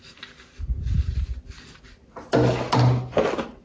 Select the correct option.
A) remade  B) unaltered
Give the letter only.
B